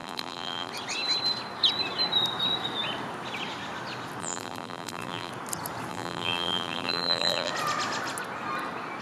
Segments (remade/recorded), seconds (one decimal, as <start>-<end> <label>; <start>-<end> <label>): 0.0-0.7 remade; 0.7-4.2 recorded; 4.2-5.3 remade; 5.3-5.9 recorded; 5.9-7.5 remade; 7.5-9.0 recorded